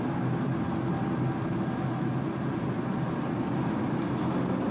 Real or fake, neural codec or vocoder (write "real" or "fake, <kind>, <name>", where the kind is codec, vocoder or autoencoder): real